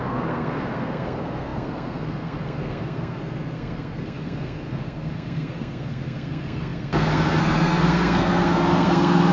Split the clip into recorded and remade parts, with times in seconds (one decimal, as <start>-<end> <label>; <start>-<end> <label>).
0.0-9.3 remade